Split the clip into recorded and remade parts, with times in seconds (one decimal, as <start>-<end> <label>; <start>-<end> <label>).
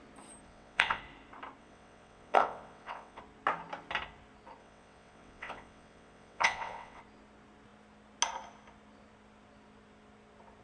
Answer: 0.0-0.4 recorded; 0.4-1.0 remade; 1.0-1.6 recorded; 1.6-3.2 remade; 3.2-4.6 recorded; 4.6-7.0 remade; 7.0-10.6 recorded